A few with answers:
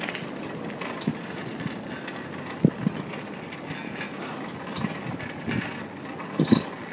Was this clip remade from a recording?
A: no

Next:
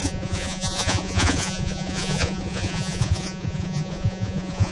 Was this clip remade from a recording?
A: yes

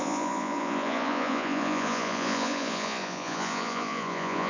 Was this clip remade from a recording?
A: yes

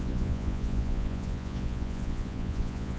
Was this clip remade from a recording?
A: yes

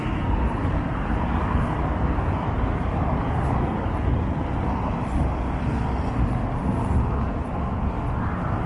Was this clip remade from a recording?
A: no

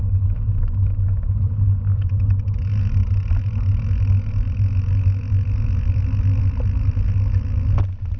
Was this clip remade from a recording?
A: no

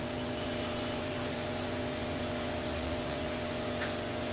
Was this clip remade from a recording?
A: yes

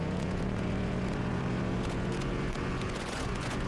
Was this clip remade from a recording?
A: yes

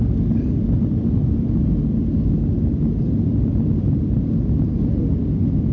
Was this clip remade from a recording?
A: no